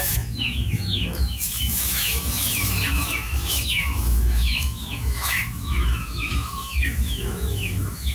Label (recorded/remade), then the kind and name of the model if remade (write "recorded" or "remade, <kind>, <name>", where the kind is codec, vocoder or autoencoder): remade, autoencoder, DAC-VAE